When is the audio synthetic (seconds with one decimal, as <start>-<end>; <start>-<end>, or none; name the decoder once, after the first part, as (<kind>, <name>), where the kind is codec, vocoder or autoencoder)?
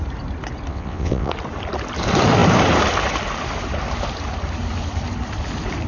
0.7-1.3 (vocoder, WaveNeXt)